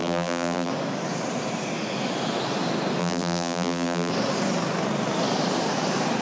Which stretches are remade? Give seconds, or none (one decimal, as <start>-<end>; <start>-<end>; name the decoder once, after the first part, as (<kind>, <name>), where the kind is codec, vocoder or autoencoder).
0.0-0.7 (vocoder, BigVGAN v2); 3.0-4.1